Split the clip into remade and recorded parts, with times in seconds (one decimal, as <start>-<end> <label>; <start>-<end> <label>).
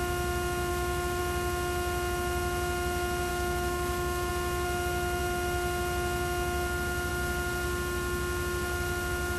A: 0.0-0.7 recorded; 0.7-1.2 remade; 1.2-3.3 recorded; 3.3-4.3 remade; 4.3-9.4 recorded